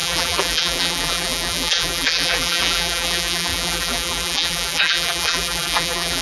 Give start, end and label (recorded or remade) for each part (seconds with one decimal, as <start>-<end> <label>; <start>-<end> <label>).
0.0-6.2 remade